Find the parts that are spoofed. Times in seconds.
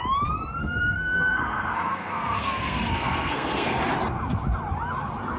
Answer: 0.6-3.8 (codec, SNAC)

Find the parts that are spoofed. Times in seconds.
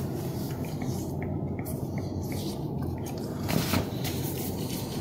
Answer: 1.7-5.0 (vocoder, BigVGAN v2)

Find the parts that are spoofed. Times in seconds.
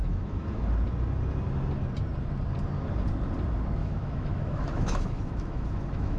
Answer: 0.0-0.7 (autoencoder, DAC-VAE); 3.8-6.2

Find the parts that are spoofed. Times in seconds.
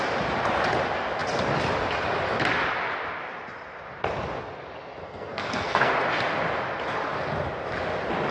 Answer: 5.0-5.9 (codec, SNAC)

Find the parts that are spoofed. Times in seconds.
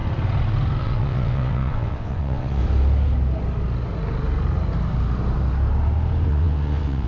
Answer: 0.8-2.6 (vocoder, WaveNeXt); 6.3-7.1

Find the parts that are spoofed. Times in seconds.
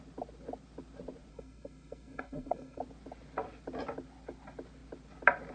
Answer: 1.3-2.8 (codec, SNAC)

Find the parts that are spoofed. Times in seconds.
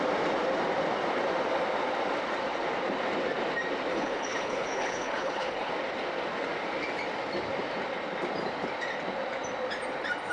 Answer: 3.9-5.7 (codec, HILCodec)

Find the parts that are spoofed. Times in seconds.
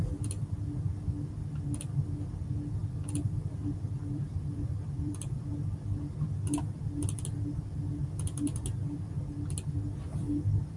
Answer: 2.8-5.4 (vocoder, BigVGAN v2)